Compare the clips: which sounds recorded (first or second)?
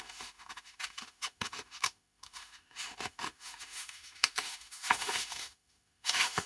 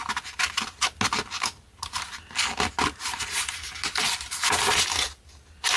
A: second